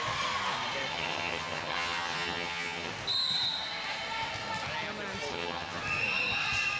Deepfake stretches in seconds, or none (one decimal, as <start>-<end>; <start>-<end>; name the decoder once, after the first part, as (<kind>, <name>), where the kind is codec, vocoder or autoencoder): 0.9-2.9 (vocoder, HiFi-GAN); 5.3-5.8